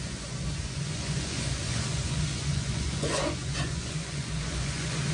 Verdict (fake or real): fake